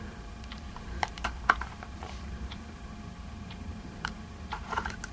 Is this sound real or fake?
fake